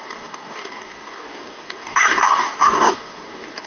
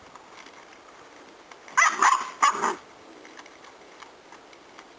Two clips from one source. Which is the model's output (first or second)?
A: first